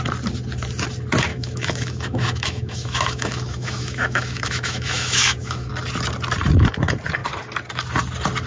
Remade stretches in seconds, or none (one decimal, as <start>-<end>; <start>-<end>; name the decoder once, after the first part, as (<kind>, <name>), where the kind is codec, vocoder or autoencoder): 1.3-5.7 (autoencoder, DAC-VAE)